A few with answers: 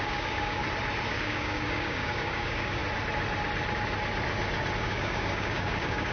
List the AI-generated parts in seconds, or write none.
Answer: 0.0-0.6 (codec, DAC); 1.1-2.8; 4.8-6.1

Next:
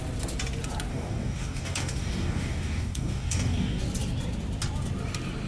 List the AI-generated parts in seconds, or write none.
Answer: 0.9-3.8 (codec, DAC)

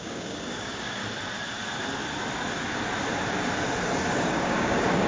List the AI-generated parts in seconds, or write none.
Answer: 0.0-1.0 (codec, DAC); 4.1-5.1

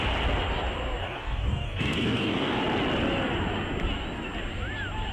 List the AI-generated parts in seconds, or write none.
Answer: 1.0-2.6 (codec, DAC)